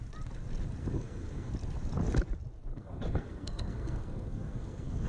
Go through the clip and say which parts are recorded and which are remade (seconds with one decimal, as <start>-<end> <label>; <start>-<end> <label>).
0.0-0.8 recorded; 0.8-1.5 remade; 1.5-2.7 recorded; 2.7-5.1 remade